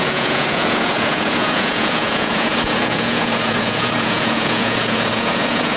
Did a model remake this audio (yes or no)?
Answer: yes